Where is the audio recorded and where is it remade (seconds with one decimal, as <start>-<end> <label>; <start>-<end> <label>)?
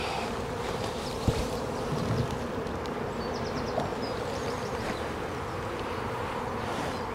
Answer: 0.0-3.9 recorded; 3.9-5.4 remade; 5.4-7.1 recorded